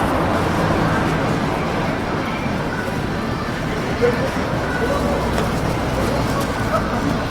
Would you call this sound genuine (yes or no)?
yes